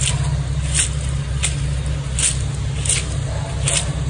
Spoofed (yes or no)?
no